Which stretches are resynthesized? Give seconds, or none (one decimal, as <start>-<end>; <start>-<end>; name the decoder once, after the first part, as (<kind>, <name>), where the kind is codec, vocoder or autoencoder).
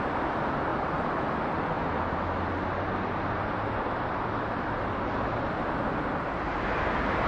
none